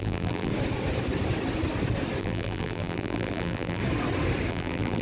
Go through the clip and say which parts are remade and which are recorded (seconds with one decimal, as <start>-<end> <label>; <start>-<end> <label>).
0.0-0.5 remade; 0.5-2.2 recorded; 2.2-3.8 remade; 3.8-4.5 recorded; 4.5-5.0 remade